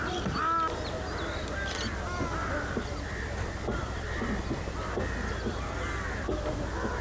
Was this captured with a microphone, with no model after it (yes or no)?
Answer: yes